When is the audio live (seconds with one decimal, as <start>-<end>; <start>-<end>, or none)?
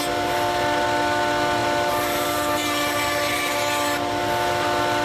0.0-1.6; 3.5-5.0